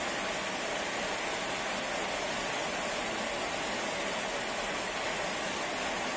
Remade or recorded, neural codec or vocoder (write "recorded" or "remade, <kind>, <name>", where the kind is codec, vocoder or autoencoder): recorded